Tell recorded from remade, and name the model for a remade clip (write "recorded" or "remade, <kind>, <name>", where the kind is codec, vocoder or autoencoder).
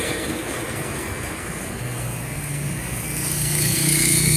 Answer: remade, codec, SNAC